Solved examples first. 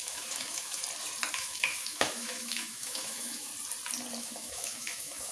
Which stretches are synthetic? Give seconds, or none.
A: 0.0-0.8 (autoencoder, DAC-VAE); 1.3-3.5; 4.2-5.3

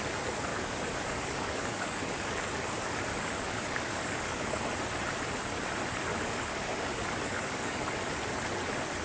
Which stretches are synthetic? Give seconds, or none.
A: 0.5-4.6 (codec, DAC); 6.1-8.0